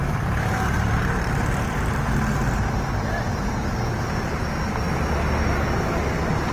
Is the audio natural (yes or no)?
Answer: yes